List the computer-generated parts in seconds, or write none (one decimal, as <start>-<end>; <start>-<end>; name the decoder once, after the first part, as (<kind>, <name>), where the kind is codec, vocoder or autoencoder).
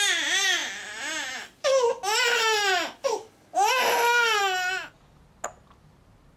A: none